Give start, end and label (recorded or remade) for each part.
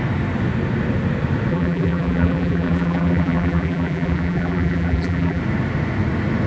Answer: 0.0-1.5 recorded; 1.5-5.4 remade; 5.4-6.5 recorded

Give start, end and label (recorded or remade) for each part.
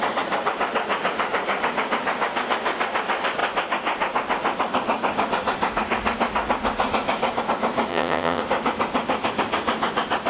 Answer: 0.0-7.9 recorded; 7.9-8.4 remade; 8.4-10.3 recorded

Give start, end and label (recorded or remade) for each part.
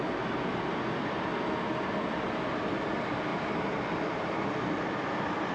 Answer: 0.0-1.3 remade; 1.3-2.1 recorded; 2.1-5.5 remade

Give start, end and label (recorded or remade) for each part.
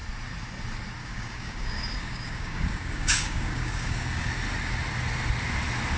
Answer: 0.0-1.0 recorded; 1.0-4.3 remade; 4.3-6.0 recorded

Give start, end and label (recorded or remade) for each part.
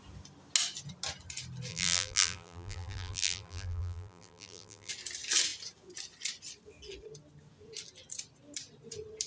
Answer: 0.0-1.7 recorded; 1.7-4.9 remade; 4.9-9.3 recorded